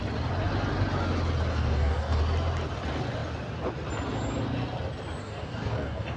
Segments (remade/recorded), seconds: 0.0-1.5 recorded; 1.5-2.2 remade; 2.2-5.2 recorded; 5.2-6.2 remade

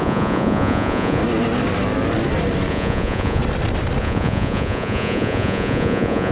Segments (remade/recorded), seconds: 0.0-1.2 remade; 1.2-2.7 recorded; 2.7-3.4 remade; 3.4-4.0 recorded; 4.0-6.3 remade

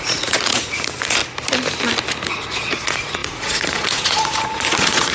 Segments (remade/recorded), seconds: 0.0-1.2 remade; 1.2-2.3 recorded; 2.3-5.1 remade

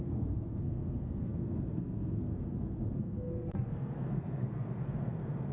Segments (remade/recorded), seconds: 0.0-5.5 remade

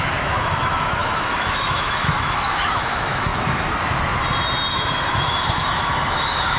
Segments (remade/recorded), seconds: 0.0-3.3 remade; 3.3-4.7 recorded; 4.7-6.6 remade

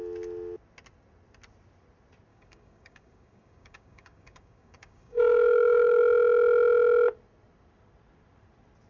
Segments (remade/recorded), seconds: 0.0-2.3 recorded; 2.3-6.0 remade; 6.0-8.9 recorded